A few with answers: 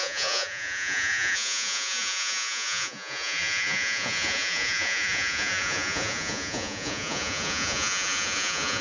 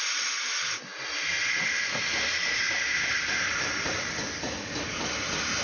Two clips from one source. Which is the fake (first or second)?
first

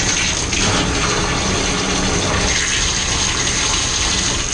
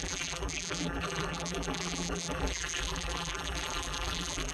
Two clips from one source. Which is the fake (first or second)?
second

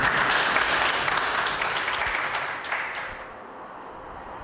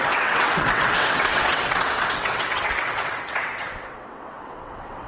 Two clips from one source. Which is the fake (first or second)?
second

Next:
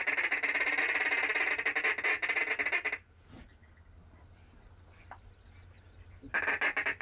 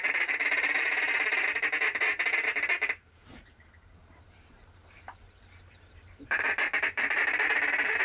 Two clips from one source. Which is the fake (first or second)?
second